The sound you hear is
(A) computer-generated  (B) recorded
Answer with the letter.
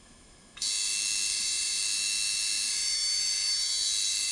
A